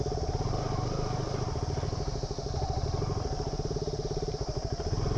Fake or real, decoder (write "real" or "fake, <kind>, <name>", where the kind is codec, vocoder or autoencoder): real